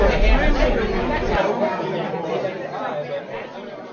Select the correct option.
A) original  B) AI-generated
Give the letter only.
A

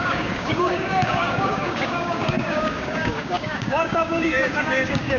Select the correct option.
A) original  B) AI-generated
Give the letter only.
B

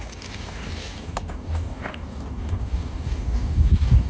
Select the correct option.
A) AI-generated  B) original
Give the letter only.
A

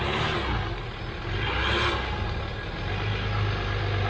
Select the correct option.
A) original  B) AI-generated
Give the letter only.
A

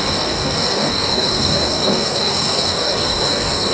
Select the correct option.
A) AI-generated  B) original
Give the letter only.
A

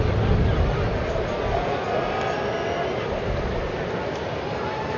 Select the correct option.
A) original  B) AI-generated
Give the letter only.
A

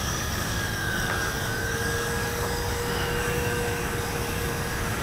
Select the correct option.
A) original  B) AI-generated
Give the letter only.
B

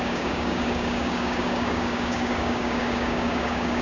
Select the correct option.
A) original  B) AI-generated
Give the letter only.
B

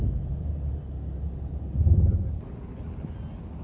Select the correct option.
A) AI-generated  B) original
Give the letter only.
B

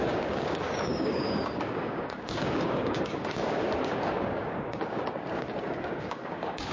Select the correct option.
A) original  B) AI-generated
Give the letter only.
B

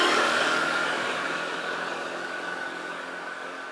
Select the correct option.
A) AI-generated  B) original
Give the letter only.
A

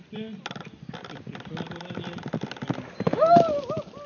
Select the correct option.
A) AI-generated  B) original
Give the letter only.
B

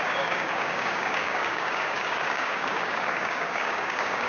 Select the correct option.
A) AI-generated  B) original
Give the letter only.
A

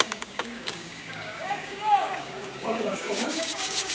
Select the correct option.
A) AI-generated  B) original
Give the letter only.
A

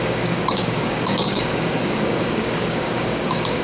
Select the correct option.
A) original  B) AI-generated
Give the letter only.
B